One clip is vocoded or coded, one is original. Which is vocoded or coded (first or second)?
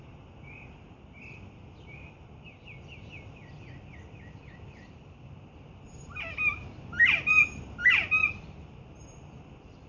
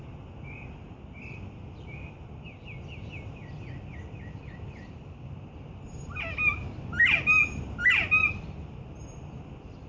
first